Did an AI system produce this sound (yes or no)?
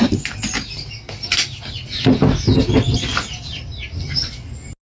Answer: no